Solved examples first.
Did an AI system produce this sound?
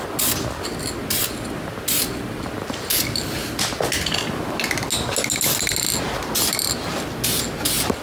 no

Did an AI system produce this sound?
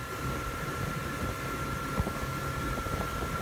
no